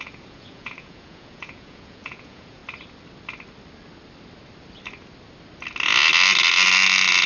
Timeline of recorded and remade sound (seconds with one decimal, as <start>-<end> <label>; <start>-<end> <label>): 0.0-2.6 remade; 2.6-7.3 recorded